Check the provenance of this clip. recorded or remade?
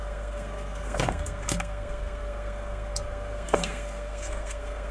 remade